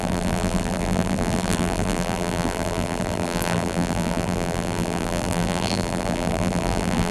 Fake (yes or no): yes